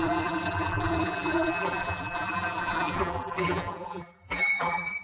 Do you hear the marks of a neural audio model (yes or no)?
yes